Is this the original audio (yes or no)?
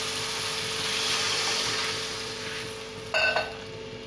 yes